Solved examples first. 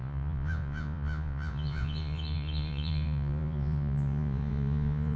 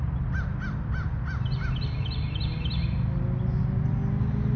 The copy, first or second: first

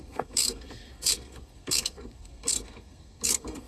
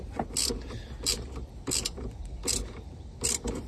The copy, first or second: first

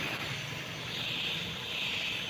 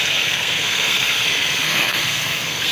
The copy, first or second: second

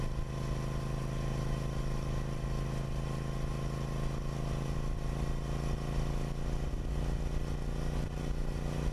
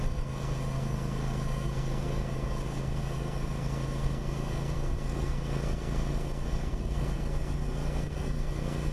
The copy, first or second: second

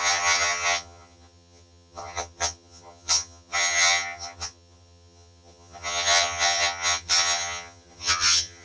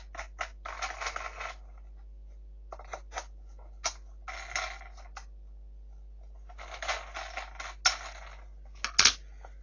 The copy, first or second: first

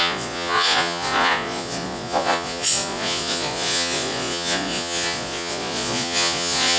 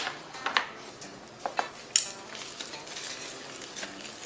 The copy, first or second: first